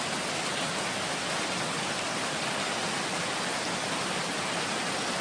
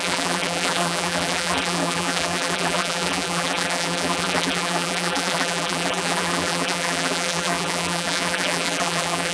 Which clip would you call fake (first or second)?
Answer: second